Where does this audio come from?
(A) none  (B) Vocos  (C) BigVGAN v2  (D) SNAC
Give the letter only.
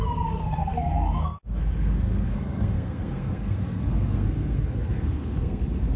D